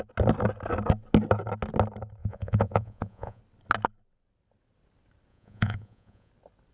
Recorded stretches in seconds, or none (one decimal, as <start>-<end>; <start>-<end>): 0.0-2.2; 3.4-5.3; 6.3-6.7